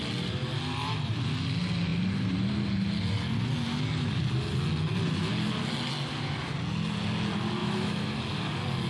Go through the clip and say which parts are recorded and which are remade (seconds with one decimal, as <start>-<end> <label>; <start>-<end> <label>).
0.0-7.6 recorded; 7.6-8.2 remade; 8.2-8.9 recorded